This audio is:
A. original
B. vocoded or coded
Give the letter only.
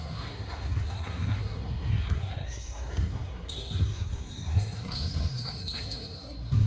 B